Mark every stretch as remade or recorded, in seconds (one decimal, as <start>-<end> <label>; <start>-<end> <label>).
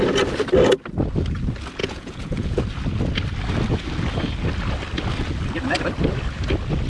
0.0-1.8 recorded; 1.8-2.6 remade; 2.6-6.9 recorded